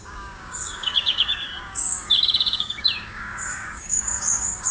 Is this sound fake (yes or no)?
yes